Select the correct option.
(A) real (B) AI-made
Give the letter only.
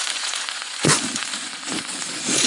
B